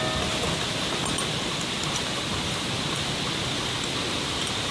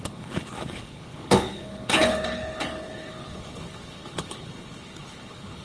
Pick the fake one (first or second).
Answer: second